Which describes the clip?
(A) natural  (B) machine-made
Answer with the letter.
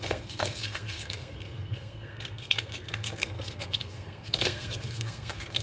B